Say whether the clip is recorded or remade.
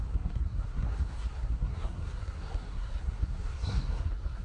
remade